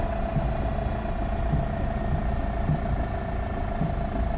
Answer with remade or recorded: recorded